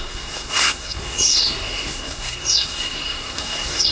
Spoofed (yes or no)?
yes